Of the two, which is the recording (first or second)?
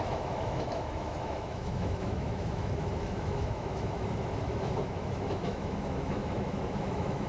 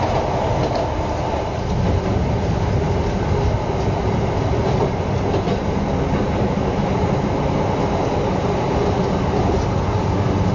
second